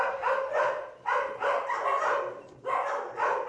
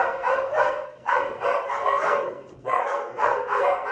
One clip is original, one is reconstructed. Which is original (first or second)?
first